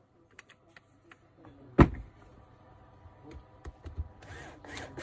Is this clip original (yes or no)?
yes